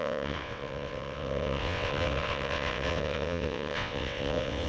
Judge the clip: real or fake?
fake